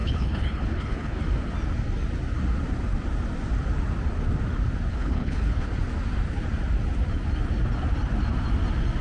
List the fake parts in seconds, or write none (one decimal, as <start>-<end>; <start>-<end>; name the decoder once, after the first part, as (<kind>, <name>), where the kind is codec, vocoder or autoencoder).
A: 0.0-1.2 (codec, HILCodec); 4.9-5.7